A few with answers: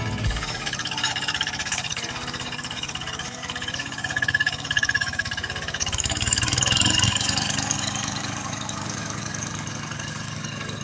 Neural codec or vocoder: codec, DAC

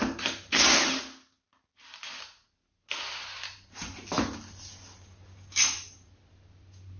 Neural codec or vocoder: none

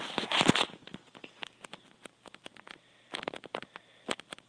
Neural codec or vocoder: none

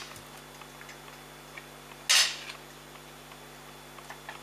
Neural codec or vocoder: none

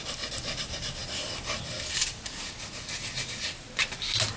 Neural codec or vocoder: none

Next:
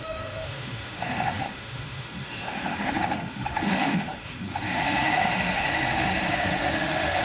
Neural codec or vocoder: autoencoder, DAC-VAE